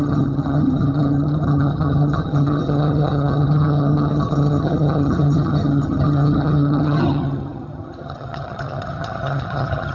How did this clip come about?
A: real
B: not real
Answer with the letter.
B